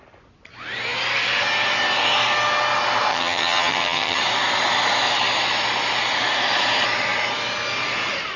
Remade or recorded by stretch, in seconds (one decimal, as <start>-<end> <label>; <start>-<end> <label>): 0.0-3.1 recorded; 3.1-4.2 remade; 4.2-8.4 recorded